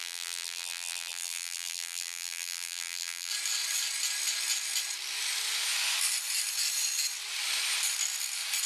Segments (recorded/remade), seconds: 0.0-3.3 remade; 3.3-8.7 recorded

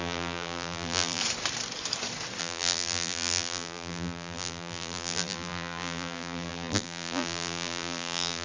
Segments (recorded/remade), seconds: 0.0-1.2 remade; 1.2-2.4 recorded; 2.4-8.4 remade

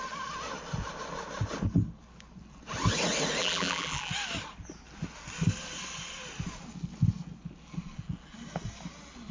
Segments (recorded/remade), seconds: 0.0-3.4 recorded; 3.4-4.1 remade; 4.1-9.3 recorded